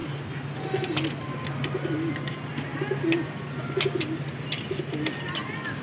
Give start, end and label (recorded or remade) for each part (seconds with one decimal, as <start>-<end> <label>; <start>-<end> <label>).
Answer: 0.0-5.8 recorded